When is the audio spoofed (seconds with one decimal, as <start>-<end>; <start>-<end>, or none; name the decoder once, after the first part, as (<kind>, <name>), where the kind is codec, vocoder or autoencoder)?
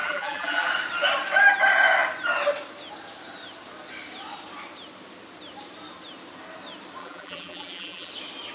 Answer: 0.0-0.7 (vocoder, BigVGAN v2); 7.0-8.1